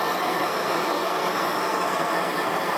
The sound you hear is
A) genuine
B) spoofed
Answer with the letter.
B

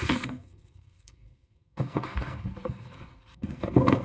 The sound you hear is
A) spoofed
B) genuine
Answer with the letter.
A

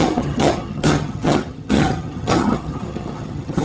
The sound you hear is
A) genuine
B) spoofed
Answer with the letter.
B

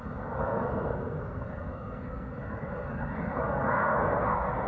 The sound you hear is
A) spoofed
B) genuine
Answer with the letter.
A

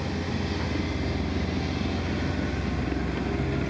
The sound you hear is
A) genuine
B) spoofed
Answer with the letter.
A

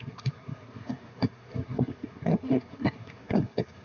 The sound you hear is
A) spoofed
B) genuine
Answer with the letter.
A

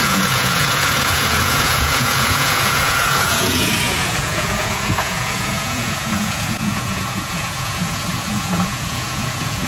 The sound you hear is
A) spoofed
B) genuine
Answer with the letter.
A